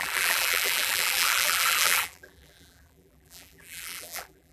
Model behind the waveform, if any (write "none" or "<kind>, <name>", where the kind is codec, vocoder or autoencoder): vocoder, BigVGAN v2